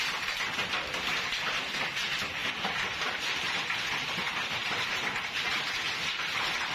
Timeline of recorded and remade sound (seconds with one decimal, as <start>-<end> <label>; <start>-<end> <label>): 0.0-6.7 recorded